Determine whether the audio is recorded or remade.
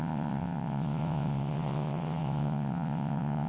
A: remade